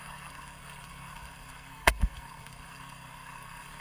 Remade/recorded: remade